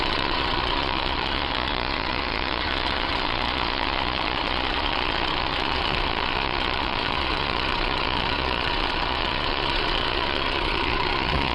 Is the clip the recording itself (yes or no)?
no